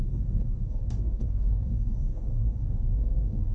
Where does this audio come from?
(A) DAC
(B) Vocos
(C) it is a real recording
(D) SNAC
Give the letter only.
A